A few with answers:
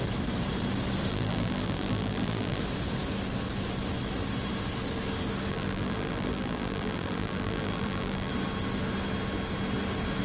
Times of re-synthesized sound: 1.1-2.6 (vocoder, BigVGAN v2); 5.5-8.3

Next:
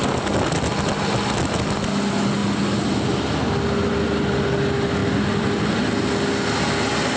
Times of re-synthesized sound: none